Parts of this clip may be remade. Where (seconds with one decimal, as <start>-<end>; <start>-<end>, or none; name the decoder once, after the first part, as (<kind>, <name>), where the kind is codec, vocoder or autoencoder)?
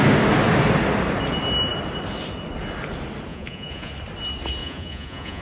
3.3-3.9 (vocoder, Vocos); 4.6-5.4